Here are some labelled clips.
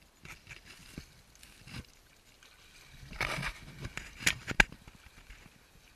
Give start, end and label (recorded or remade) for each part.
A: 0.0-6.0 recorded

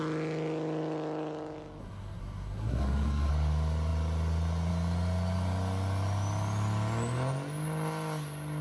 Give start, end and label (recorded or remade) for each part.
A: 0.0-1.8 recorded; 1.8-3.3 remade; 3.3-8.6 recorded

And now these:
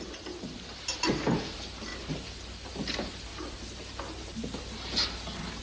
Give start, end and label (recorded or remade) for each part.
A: 0.0-5.6 recorded